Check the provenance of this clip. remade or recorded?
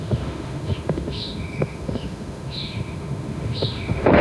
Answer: remade